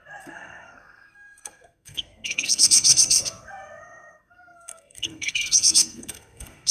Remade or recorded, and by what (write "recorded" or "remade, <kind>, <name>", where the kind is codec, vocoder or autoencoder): remade, codec, SNAC